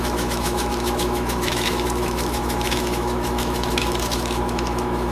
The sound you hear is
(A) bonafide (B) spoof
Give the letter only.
B